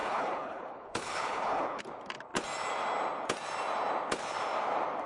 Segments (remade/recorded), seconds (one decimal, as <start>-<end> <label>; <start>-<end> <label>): 0.0-1.8 remade; 1.8-5.1 recorded